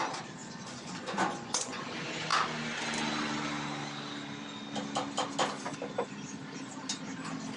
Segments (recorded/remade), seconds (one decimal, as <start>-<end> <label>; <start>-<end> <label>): 0.0-0.4 recorded; 0.4-1.8 remade; 1.8-7.6 recorded